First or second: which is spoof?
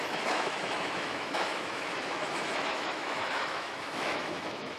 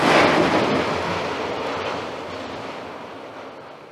first